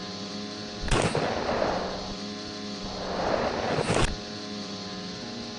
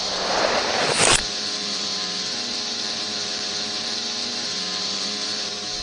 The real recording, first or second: first